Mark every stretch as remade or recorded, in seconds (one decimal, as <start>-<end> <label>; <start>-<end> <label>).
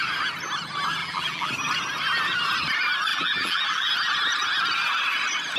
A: 0.0-1.0 recorded; 1.0-1.5 remade; 1.5-3.1 recorded; 3.1-3.9 remade; 3.9-5.6 recorded